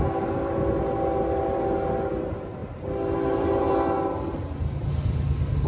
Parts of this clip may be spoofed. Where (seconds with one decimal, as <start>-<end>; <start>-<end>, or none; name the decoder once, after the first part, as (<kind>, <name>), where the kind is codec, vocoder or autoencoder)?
none